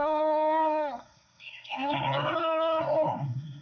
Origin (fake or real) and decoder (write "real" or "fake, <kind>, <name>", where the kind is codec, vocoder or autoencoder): fake, codec, SNAC